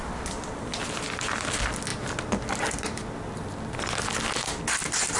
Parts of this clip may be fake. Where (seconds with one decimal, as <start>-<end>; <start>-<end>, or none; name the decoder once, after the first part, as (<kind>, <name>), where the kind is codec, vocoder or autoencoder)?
none